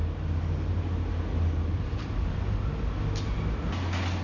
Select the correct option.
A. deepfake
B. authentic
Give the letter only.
B